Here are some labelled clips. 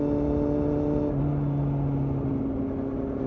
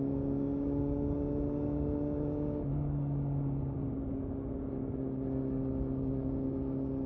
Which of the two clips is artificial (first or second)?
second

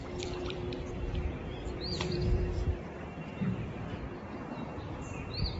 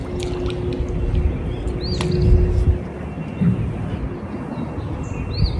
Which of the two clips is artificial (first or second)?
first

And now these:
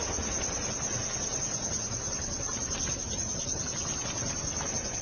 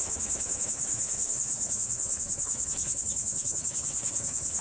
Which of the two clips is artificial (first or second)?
second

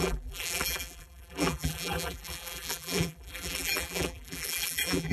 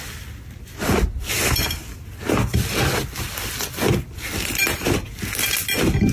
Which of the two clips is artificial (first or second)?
first